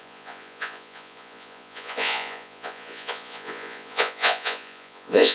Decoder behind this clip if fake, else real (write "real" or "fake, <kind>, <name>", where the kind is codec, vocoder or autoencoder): fake, vocoder, Vocos